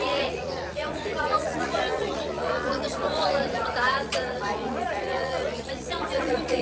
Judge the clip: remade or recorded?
remade